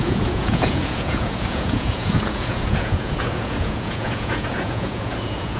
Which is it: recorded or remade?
remade